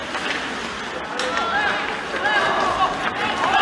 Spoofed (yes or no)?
no